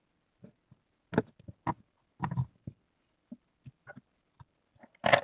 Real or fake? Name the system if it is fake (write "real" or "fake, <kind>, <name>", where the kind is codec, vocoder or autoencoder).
real